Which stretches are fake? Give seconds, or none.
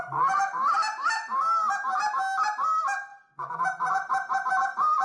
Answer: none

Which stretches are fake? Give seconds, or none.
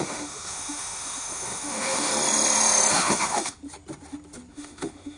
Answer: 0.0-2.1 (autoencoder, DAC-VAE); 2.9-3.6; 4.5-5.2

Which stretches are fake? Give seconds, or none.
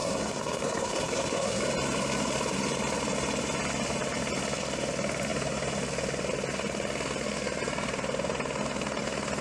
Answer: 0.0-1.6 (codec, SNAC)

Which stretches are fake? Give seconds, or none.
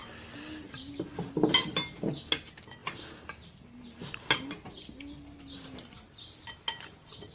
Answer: none